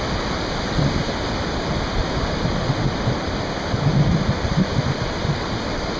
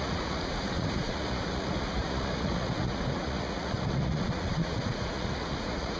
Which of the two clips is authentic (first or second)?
first